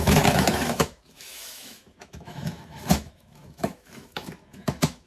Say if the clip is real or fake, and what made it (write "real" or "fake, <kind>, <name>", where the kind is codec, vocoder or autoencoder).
fake, autoencoder, DAC-VAE